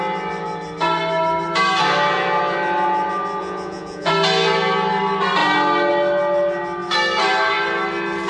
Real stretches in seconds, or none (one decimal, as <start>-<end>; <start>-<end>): 0.0-3.4; 4.1-8.3